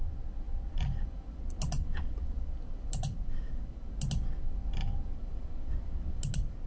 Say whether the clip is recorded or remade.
recorded